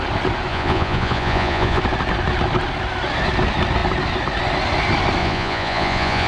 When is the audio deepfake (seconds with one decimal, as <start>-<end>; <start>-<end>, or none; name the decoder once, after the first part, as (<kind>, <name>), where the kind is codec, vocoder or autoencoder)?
0.5-1.8 (vocoder, Vocos); 5.2-6.3